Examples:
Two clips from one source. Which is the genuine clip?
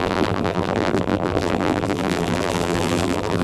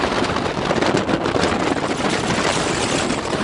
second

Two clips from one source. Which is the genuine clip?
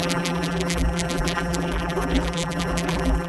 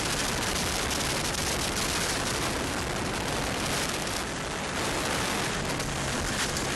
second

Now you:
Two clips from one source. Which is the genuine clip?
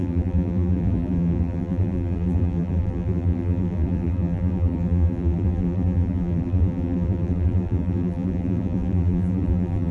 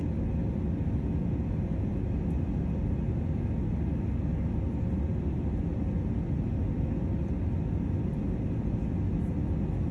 second